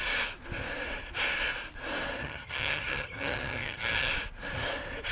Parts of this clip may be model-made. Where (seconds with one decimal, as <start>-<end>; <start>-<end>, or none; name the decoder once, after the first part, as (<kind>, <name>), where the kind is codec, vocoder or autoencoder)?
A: 2.2-4.1 (vocoder, HiFi-GAN)